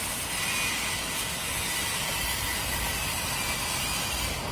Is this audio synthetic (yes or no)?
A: no